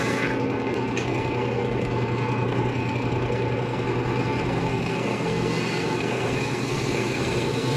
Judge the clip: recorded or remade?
remade